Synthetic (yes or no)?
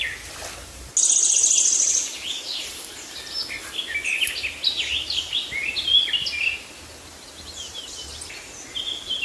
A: no